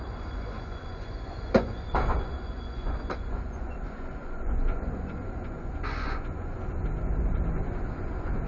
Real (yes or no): no